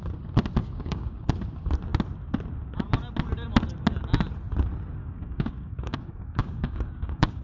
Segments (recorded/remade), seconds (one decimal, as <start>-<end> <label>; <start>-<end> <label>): 0.0-0.6 recorded; 0.6-1.3 remade; 1.3-5.0 recorded; 5.0-7.4 remade